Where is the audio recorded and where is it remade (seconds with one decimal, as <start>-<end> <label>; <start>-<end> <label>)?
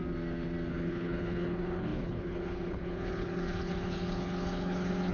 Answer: 0.0-0.7 recorded; 0.7-5.1 remade